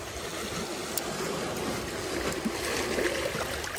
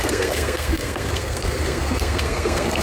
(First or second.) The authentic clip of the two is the first